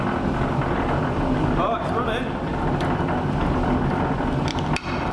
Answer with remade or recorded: remade